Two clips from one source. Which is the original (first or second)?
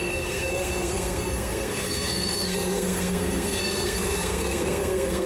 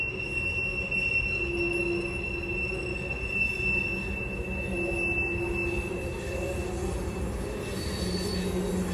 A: second